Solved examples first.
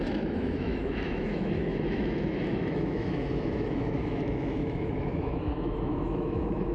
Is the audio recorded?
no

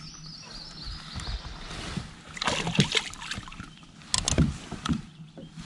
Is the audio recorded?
yes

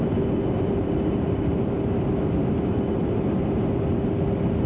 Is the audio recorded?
yes